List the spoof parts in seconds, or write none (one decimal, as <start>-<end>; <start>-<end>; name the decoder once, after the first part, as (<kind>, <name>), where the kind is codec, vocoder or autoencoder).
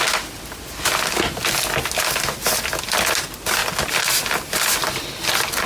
none